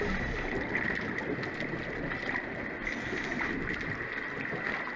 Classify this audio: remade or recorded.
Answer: recorded